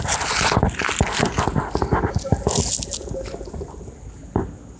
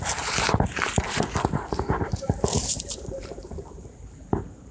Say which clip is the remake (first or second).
second